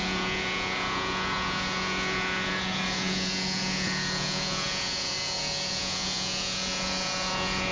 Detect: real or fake fake